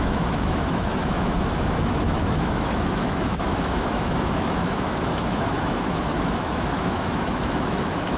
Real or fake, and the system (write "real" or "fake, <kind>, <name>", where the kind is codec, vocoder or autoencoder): fake, autoencoder, DAC-VAE